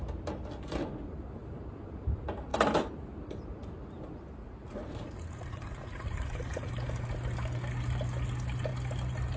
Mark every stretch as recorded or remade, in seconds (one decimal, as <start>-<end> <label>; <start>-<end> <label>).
0.0-4.4 recorded; 4.4-6.7 remade; 6.7-9.4 recorded